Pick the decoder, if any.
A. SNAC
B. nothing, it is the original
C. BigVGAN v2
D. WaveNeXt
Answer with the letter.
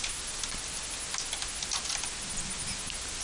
B